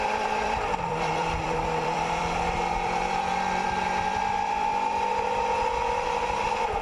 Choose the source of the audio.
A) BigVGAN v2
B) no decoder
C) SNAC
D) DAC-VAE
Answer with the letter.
A